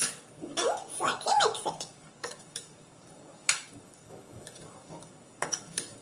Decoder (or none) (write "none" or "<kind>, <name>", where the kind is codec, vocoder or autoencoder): codec, DAC